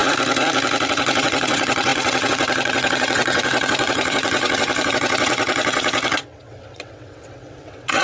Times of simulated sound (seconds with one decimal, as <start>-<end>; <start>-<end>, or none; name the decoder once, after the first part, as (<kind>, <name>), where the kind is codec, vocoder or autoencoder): 0.9-8.0 (vocoder, WaveNeXt)